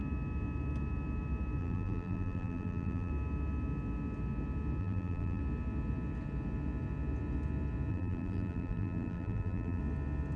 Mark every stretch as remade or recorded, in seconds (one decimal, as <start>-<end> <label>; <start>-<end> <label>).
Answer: 0.0-1.6 recorded; 1.6-3.1 remade; 3.1-4.8 recorded; 4.8-5.4 remade; 5.4-7.9 recorded; 7.9-9.8 remade; 9.8-10.4 recorded